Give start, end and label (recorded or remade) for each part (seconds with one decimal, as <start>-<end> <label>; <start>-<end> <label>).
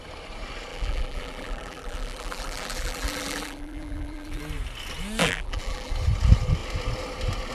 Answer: 0.0-0.7 recorded; 0.7-4.4 remade; 4.4-5.2 recorded; 5.2-5.9 remade; 5.9-7.5 recorded